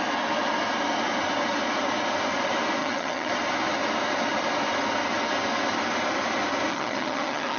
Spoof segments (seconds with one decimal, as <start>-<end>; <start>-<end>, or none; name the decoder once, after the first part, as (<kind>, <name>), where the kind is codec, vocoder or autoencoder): 2.8-3.3 (vocoder, HiFi-GAN); 6.7-7.6